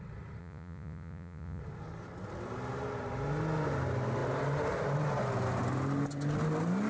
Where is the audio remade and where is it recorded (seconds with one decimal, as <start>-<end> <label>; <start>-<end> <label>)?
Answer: 0.0-0.4 recorded; 0.4-1.6 remade; 1.6-6.9 recorded